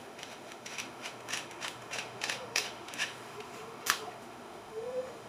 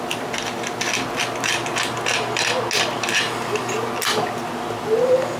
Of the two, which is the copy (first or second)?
first